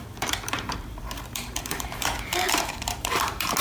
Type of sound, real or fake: fake